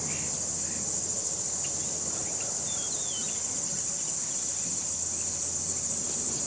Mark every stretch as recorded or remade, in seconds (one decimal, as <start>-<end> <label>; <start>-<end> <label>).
0.0-6.5 recorded